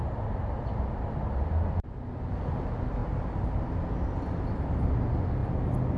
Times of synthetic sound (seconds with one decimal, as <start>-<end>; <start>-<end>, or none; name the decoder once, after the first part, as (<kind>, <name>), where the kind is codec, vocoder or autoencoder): none